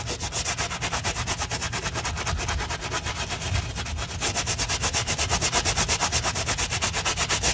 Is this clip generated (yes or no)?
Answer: no